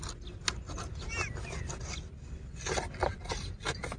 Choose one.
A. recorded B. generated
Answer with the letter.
A